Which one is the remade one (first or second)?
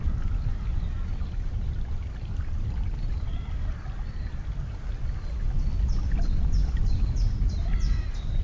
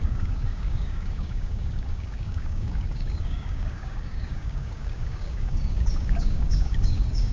second